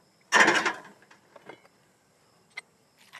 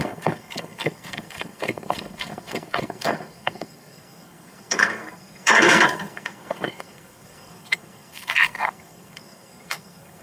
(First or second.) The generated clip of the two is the second